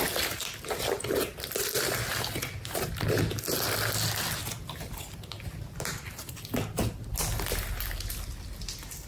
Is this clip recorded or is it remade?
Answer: recorded